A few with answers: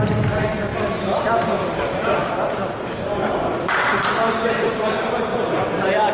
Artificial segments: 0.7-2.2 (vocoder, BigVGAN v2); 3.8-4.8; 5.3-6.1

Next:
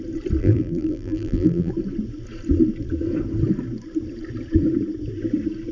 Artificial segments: 0.4-1.7 (vocoder, BigVGAN v2)

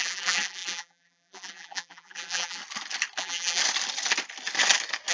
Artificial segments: 0.0-2.6 (vocoder, BigVGAN v2); 3.2-3.6

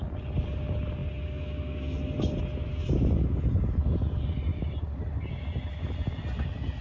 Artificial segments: 4.5-5.3 (vocoder, BigVGAN v2)

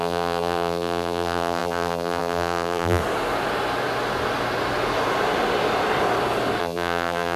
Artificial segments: 0.0-3.0 (vocoder, BigVGAN v2); 6.6-7.4

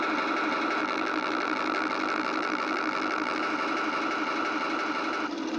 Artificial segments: 0.8-3.4 (vocoder, BigVGAN v2)

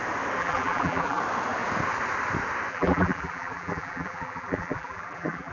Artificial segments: 0.4-1.2 (vocoder, BigVGAN v2); 2.7-5.5